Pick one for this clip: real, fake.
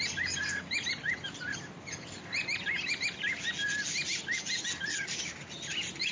real